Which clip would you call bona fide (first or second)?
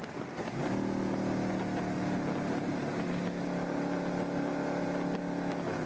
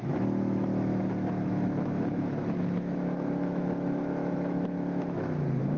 first